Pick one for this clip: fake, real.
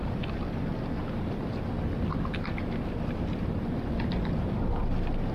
real